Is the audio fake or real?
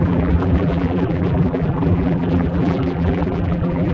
fake